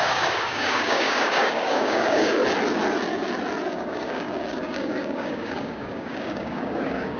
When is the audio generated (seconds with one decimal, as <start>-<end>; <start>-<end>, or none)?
0.0-2.4; 3.7-7.2